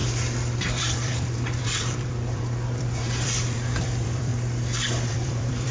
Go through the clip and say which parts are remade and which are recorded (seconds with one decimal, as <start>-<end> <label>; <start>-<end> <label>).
0.0-0.6 recorded; 0.6-4.3 remade; 4.3-5.1 recorded; 5.1-5.7 remade